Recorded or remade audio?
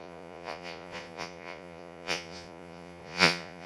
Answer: remade